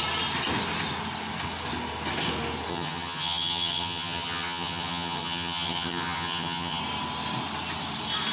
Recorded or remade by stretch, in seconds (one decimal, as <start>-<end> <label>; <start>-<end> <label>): 0.0-2.7 recorded; 2.7-6.8 remade; 6.8-8.3 recorded